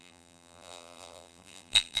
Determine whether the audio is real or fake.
fake